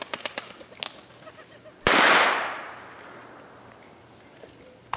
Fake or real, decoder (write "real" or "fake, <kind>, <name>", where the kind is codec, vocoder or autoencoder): real